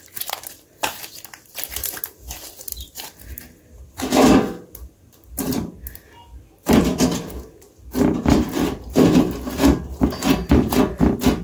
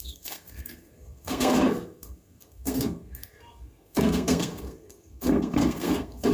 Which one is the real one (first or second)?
first